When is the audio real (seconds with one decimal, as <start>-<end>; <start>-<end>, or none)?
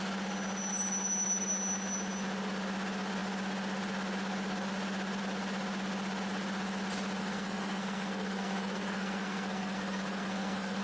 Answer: 0.0-7.2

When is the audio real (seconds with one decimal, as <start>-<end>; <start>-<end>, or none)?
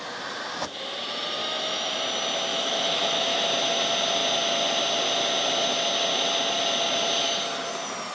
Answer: 0.0-1.4; 1.9-2.5; 3.5-8.1